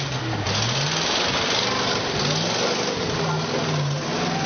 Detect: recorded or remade recorded